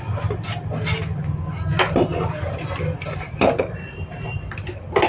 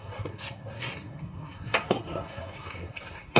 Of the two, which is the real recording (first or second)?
first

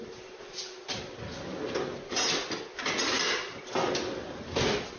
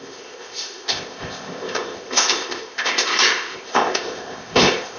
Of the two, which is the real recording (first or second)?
first